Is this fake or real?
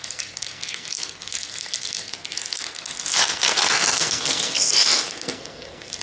fake